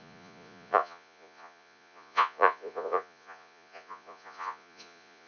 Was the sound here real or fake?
fake